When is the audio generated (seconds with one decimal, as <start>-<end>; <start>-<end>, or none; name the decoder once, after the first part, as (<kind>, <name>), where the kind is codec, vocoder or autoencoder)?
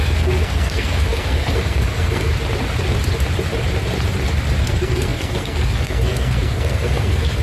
0.0-2.3 (codec, SNAC); 4.6-7.4